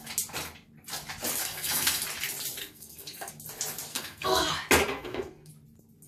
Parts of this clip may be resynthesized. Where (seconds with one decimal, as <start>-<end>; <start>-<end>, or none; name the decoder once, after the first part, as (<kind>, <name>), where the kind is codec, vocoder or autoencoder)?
1.4-2.0 (codec, SNAC); 2.6-3.3; 3.9-4.5; 4.9-5.5